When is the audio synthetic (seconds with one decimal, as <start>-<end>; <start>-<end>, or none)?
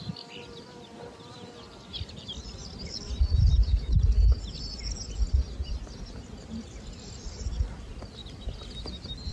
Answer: none